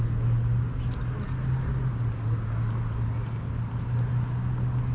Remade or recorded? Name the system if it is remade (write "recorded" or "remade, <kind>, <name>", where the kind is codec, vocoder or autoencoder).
recorded